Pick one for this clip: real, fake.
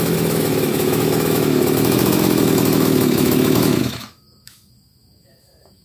fake